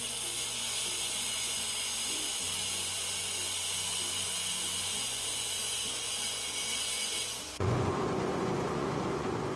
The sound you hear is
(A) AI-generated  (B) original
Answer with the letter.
A